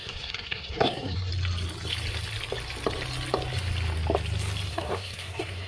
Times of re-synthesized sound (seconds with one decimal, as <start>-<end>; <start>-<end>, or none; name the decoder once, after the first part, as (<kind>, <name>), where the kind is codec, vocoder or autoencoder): 0.0-1.3 (codec, SNAC); 4.7-5.7